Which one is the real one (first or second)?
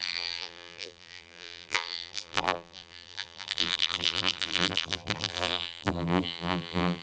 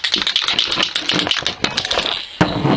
second